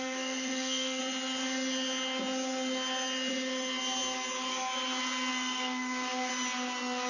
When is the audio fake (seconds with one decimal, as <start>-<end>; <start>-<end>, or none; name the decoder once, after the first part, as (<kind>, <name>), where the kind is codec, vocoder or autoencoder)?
0.0-1.0 (codec, SNAC); 5.3-6.3